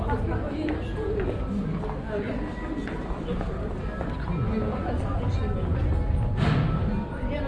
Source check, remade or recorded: recorded